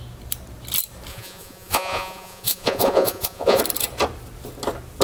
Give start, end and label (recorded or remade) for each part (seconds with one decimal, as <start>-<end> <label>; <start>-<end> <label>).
0.0-1.1 recorded; 1.1-3.6 remade; 3.6-5.0 recorded